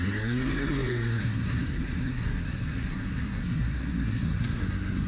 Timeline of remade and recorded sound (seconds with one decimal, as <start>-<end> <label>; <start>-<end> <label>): 0.0-5.1 remade